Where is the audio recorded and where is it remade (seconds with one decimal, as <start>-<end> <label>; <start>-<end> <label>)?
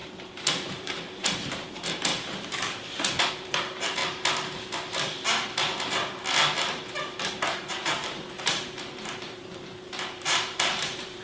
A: 0.0-2.1 remade; 2.1-3.3 recorded; 3.3-4.0 remade; 4.0-7.3 recorded; 7.3-11.2 remade